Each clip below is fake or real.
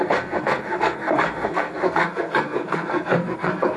fake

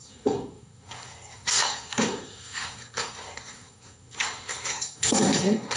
fake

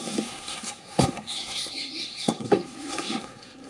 fake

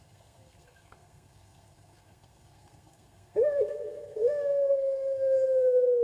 fake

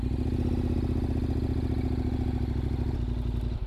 real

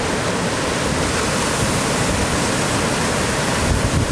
real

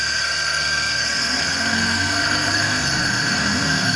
fake